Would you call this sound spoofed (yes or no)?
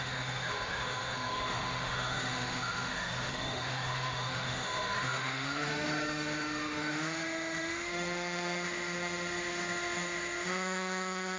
yes